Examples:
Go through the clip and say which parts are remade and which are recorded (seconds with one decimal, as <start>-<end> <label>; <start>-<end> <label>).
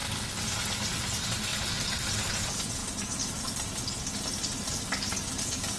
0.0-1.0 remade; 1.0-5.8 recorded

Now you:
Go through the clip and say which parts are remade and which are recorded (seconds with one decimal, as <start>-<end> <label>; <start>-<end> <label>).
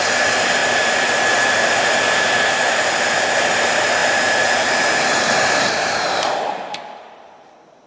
0.0-4.0 remade; 4.0-4.5 recorded; 4.5-7.9 remade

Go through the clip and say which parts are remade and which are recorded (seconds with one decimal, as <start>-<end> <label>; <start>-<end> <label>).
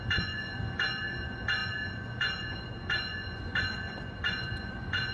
0.0-5.1 remade